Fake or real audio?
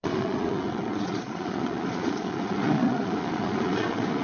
fake